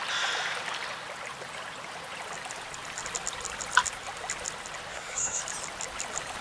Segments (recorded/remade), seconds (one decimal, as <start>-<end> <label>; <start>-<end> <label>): 0.0-4.9 recorded; 4.9-5.4 remade; 5.4-6.4 recorded